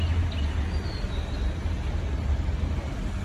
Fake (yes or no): no